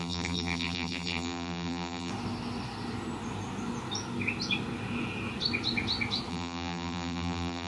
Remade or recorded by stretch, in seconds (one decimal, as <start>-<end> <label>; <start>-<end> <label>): 0.0-2.1 remade; 2.1-6.3 recorded; 6.3-7.7 remade